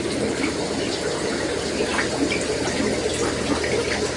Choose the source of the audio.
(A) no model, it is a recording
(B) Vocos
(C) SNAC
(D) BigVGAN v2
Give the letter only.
A